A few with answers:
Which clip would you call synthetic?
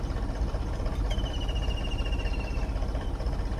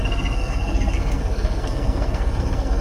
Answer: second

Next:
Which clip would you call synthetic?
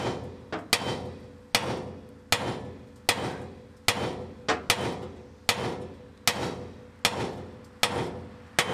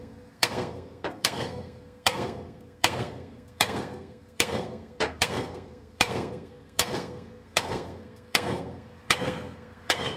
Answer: second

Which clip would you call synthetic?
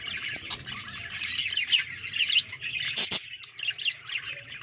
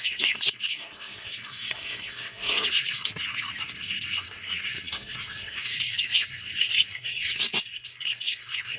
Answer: second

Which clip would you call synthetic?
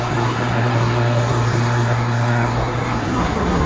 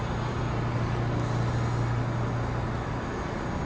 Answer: first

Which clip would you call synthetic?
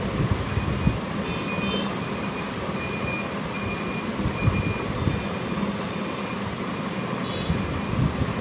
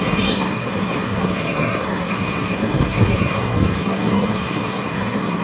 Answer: second